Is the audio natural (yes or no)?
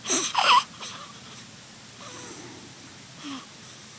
yes